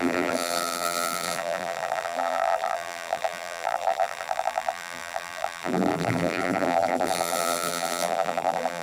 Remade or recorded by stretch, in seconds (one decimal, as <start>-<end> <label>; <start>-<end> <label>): 0.0-8.8 remade